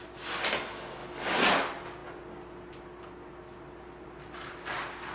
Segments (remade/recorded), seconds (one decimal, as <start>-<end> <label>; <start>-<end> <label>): 0.0-5.1 recorded

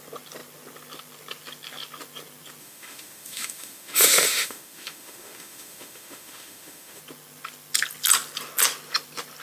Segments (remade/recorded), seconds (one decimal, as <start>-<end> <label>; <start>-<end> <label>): 0.0-2.6 recorded; 2.6-7.0 remade; 7.0-9.4 recorded

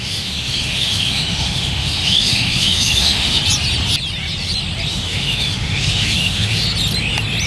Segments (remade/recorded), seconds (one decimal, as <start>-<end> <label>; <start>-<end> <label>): 0.0-3.4 remade; 3.4-4.9 recorded; 4.9-6.6 remade; 6.6-7.5 recorded

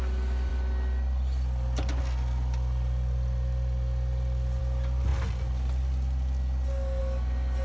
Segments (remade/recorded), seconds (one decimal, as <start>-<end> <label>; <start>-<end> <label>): 0.0-7.6 recorded

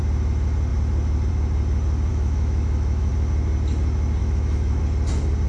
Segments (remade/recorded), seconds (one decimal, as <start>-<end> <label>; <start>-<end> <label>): 0.0-2.1 recorded; 2.1-3.1 remade; 3.1-4.2 recorded; 4.2-4.8 remade; 4.8-5.5 recorded